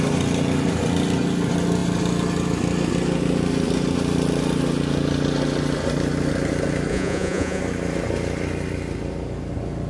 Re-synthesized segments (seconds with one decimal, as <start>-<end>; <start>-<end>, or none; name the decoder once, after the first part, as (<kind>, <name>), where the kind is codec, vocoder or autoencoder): 6.9-7.6 (vocoder, Vocos)